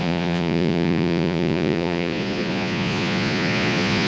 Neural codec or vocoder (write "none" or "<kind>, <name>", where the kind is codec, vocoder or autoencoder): vocoder, Vocos